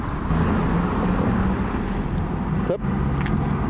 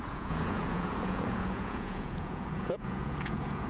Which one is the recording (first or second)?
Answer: first